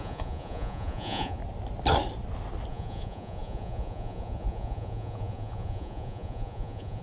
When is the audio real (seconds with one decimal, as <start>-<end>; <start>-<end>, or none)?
1.4-2.7